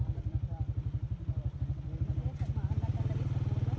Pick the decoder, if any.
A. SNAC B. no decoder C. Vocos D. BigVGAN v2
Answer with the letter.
B